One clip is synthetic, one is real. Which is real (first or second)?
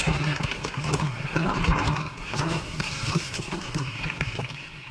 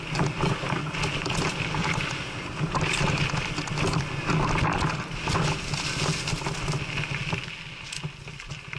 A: second